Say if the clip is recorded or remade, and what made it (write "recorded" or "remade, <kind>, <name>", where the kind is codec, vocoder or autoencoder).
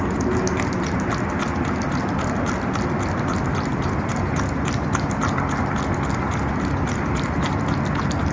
recorded